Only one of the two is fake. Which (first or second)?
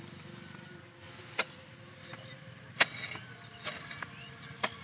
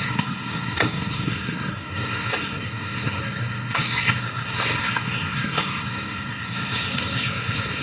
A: second